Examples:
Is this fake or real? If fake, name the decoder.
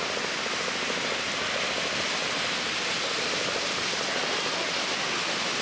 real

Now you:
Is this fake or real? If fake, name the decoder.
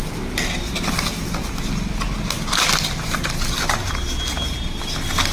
real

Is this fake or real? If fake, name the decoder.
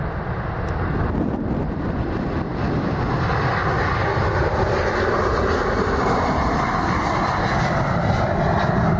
real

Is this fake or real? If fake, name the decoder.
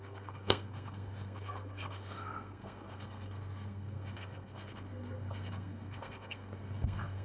fake, codec, SNAC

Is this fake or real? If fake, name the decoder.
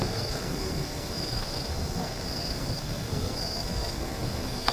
fake, codec, SNAC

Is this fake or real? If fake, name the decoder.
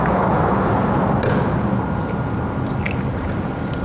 real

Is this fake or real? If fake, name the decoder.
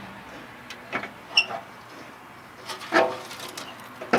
real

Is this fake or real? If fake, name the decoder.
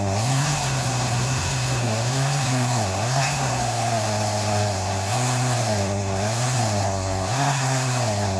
fake, codec, SNAC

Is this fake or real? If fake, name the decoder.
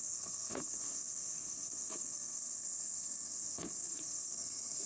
fake, codec, SNAC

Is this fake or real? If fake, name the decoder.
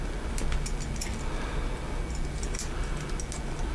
real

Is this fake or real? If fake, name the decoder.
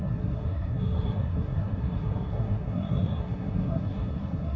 fake, codec, SNAC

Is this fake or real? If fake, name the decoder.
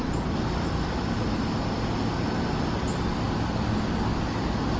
real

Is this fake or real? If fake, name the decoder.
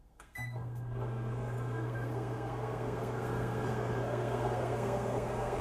fake, codec, SNAC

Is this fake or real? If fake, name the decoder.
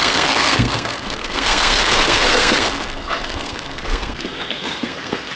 fake, codec, SNAC